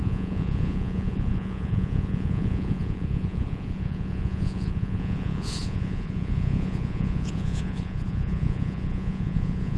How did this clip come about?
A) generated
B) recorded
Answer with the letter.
A